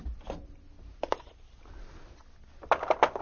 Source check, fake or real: real